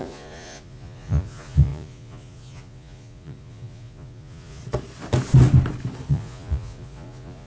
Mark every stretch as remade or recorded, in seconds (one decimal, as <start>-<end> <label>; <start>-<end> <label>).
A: 0.0-4.6 remade; 4.6-6.1 recorded; 6.1-7.5 remade